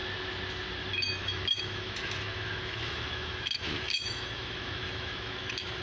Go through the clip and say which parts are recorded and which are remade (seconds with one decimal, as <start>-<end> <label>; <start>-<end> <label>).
0.0-0.9 recorded; 0.9-5.8 remade